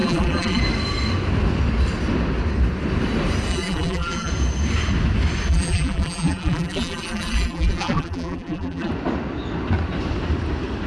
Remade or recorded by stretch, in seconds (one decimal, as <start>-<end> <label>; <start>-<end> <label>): 0.0-0.6 remade; 0.6-3.5 recorded; 3.5-4.3 remade; 4.3-5.5 recorded; 5.5-8.9 remade; 8.9-10.9 recorded